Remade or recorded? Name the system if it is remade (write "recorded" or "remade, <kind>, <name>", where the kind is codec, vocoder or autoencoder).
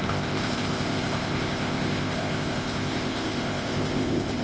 remade, codec, ZipCodec